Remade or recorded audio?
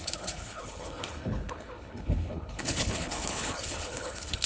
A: remade